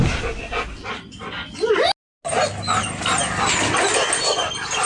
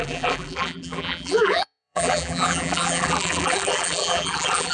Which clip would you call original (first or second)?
first